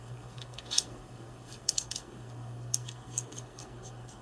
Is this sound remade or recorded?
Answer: remade